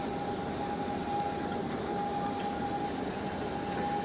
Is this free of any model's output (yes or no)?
yes